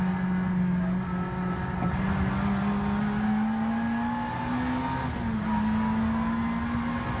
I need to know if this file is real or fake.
real